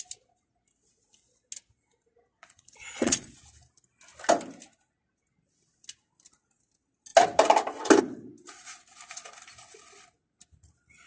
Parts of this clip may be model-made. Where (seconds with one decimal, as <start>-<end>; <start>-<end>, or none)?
2.3-3.4